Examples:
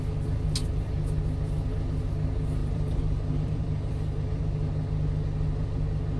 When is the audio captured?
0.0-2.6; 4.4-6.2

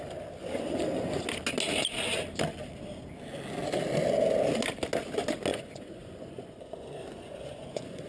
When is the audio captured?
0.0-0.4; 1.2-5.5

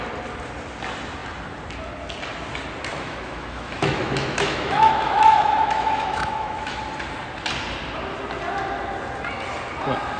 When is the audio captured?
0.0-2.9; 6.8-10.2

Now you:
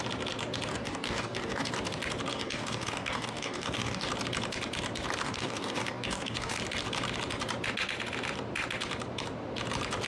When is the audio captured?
0.0-0.7; 1.7-2.3; 4.1-5.2; 6.6-10.1

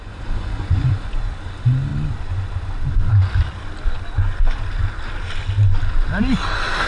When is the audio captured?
1.3-6.9

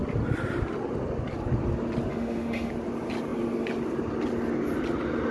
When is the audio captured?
0.0-2.1; 2.7-5.3

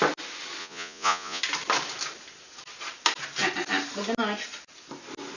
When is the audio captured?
0.0-0.6; 1.4-5.4